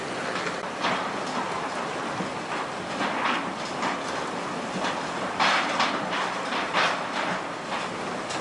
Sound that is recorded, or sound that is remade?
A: recorded